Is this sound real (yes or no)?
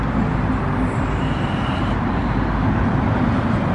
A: yes